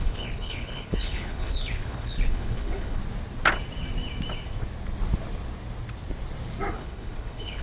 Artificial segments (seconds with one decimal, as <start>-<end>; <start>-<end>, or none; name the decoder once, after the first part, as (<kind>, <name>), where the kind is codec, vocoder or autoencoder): 0.0-3.0 (codec, HILCodec); 6.7-7.6